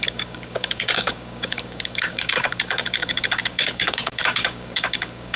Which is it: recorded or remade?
remade